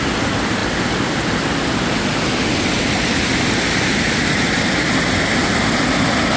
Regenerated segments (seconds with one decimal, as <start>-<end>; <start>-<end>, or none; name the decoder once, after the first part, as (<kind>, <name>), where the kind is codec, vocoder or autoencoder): none